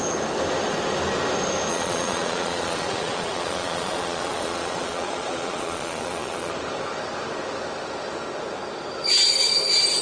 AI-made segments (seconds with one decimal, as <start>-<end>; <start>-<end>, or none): 1.7-6.5